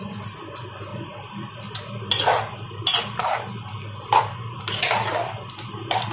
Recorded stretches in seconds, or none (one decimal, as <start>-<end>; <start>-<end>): 0.0-6.1

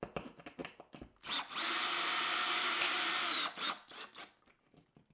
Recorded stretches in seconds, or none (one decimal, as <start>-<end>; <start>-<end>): 0.0-5.1